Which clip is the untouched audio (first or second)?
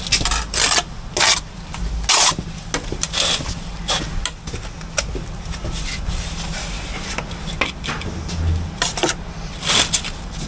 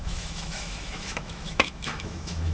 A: first